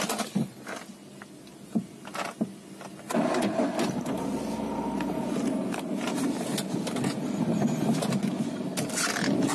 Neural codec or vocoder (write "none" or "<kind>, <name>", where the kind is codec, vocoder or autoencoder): none